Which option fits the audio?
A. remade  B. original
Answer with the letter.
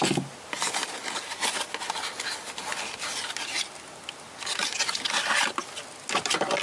B